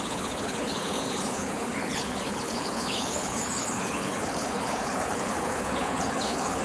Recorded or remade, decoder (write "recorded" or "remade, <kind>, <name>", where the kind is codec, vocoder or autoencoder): remade, codec, HILCodec